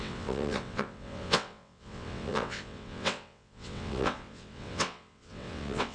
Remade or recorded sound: remade